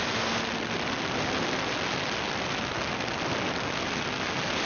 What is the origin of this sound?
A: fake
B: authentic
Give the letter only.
B